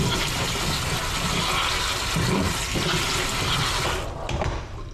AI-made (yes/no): no